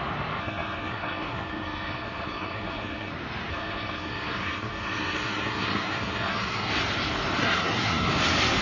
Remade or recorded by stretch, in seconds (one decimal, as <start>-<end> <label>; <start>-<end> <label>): 0.0-0.4 recorded; 0.4-3.1 remade; 3.1-3.5 recorded; 3.5-6.7 remade; 6.7-7.4 recorded; 7.4-8.1 remade; 8.1-8.6 recorded